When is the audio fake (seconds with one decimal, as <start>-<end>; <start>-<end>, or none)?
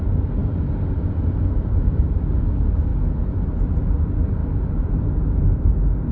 none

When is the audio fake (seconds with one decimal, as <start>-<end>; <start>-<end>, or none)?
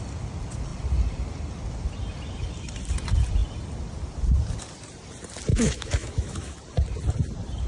5.5-6.6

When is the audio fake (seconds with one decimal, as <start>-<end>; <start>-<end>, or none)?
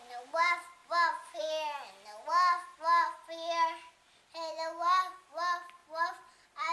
none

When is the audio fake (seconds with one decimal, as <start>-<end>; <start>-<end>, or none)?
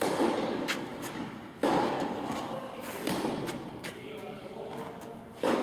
0.0-3.0; 3.7-5.6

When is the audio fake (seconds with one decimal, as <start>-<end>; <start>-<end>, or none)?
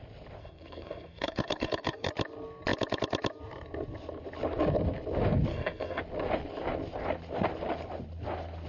0.4-2.1; 5.5-6.0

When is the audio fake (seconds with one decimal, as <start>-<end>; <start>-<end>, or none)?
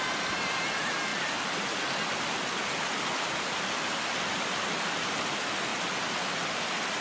none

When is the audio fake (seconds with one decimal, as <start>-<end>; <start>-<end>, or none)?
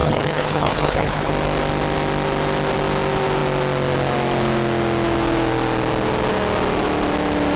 0.0-1.3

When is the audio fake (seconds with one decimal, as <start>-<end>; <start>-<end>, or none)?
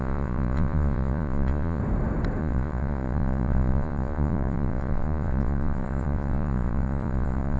0.0-1.8; 2.4-7.6